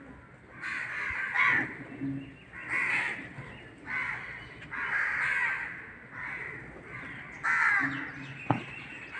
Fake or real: real